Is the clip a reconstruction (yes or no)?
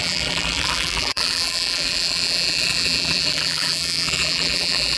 yes